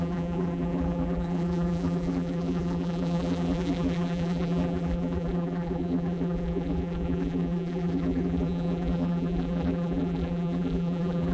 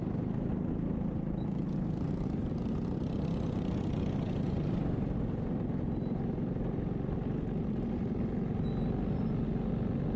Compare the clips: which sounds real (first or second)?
second